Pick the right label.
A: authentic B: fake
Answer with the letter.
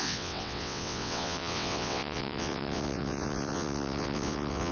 B